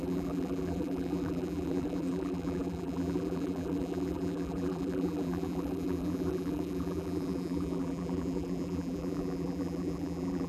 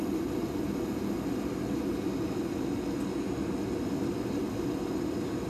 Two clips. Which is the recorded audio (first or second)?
second